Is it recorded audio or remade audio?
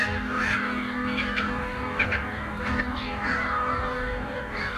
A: remade